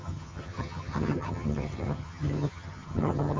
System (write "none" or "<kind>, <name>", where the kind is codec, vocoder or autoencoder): vocoder, HiFi-GAN